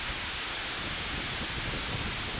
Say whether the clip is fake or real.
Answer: real